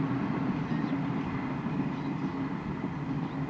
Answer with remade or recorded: recorded